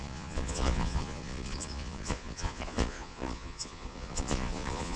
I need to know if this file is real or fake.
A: fake